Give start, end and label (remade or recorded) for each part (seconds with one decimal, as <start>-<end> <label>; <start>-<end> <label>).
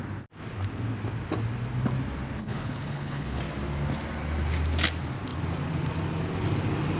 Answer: 0.0-2.4 recorded; 2.4-3.4 remade; 3.4-7.0 recorded